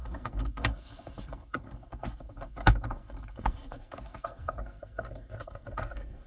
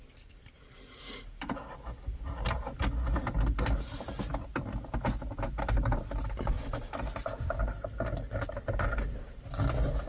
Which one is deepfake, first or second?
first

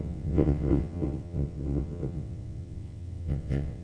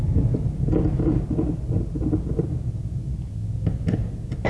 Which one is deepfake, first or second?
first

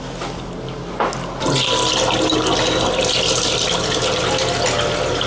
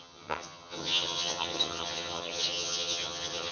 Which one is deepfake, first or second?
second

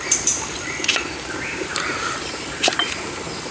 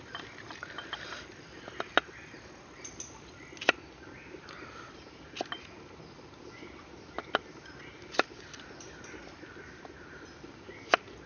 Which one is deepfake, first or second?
first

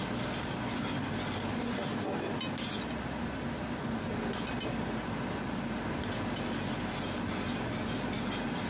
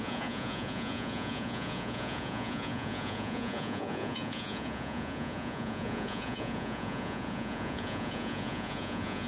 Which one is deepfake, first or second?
second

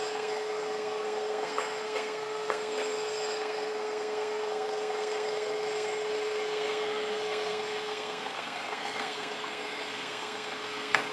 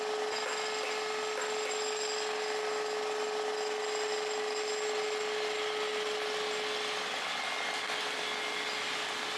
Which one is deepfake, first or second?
first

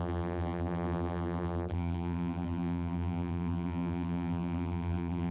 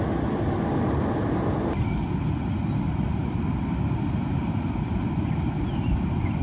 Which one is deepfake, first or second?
first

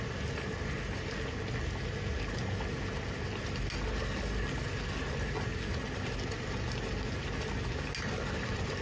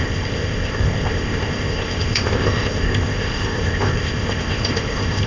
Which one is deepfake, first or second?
second